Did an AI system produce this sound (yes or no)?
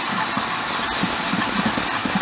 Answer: no